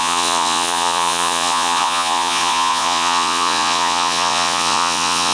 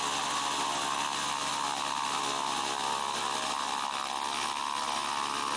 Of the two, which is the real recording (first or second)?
second